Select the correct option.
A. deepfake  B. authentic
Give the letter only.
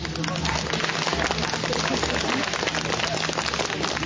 B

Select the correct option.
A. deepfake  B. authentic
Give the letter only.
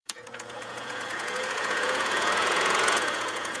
A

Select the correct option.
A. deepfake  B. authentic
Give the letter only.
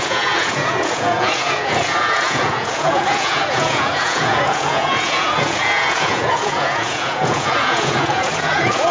A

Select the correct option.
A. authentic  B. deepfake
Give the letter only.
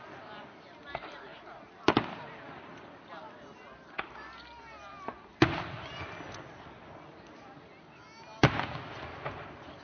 A